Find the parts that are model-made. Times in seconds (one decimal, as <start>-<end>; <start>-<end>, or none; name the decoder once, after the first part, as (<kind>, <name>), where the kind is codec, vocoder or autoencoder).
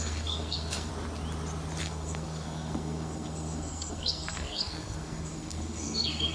0.0-0.9 (codec, SNAC); 1.8-6.3